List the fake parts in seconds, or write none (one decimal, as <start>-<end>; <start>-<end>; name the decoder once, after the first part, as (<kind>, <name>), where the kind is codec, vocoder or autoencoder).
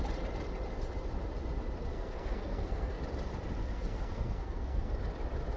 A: 1.9-3.0 (codec, SNAC); 3.6-4.9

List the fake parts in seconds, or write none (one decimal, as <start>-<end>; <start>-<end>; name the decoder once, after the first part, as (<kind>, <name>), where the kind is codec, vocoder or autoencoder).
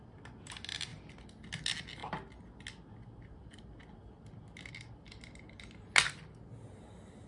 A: none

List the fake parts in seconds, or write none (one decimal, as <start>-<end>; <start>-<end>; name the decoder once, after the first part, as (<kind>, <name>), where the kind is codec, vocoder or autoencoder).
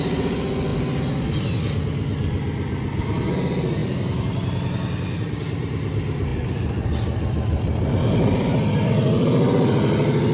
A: 0.0-0.7 (vocoder, BigVGAN v2); 3.3-3.8; 5.4-10.3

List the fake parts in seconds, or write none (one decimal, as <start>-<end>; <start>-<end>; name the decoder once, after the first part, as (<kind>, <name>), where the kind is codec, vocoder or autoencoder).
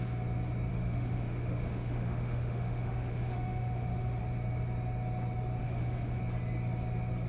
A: 0.7-4.2 (autoencoder, DAC-VAE); 5.6-6.2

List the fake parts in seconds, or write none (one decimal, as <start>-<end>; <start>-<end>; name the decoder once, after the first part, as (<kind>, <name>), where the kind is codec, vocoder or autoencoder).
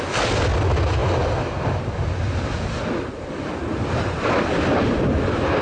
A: none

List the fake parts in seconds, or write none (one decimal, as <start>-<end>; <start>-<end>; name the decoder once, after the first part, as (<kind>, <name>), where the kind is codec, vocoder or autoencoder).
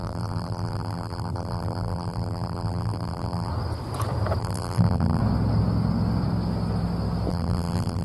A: 0.0-3.5 (vocoder, BigVGAN v2); 4.4-5.2; 7.3-8.0